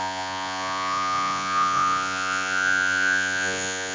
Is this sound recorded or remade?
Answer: remade